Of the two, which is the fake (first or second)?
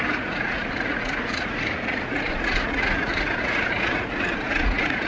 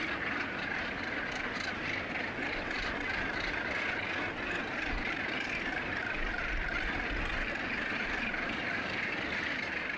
first